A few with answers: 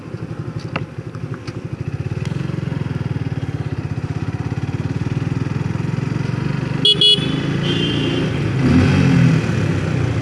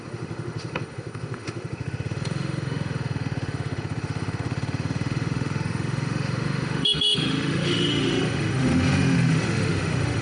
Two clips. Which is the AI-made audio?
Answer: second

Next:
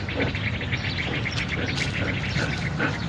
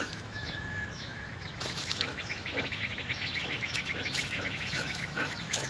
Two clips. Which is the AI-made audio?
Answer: second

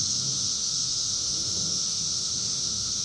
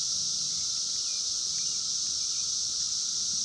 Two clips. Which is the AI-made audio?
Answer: first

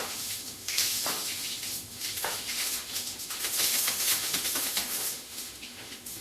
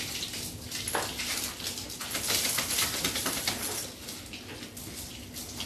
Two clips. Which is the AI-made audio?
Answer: first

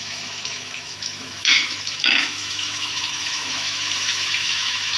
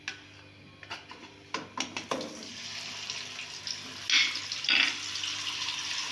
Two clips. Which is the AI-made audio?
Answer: first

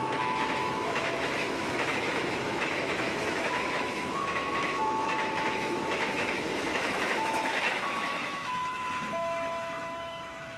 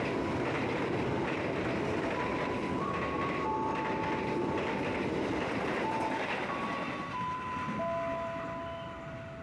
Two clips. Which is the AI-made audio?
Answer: first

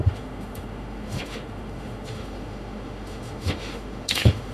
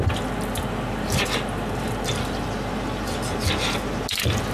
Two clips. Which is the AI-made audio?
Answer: first